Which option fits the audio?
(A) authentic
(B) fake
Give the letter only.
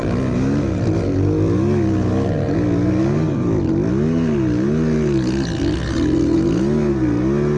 A